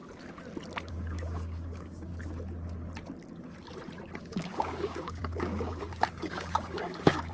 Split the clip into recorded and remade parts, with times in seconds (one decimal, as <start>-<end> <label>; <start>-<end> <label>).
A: 0.0-0.9 recorded; 0.9-2.1 remade; 2.1-4.2 recorded; 4.2-7.3 remade